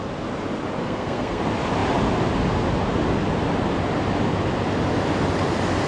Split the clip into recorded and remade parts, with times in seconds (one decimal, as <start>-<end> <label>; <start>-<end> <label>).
0.0-0.8 recorded; 0.8-1.4 remade; 1.4-5.9 recorded